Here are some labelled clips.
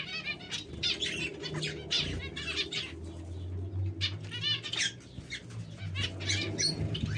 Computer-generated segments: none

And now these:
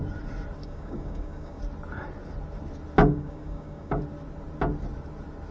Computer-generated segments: 0.6-1.6 (codec, DAC); 3.0-4.0

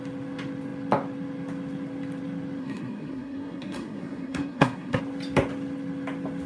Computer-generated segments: 2.6-5.0 (codec, SNAC)

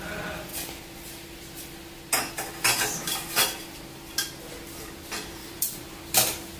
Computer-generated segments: 5.4-6.0 (vocoder, BigVGAN v2)

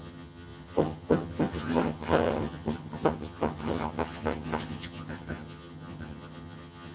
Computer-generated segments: 0.0-6.9 (vocoder, HiFi-GAN)